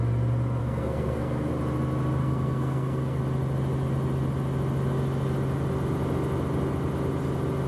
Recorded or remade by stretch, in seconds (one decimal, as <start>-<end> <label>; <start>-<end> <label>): 0.0-0.6 recorded; 0.6-1.5 remade; 1.5-2.2 recorded; 2.2-3.2 remade; 3.2-7.7 recorded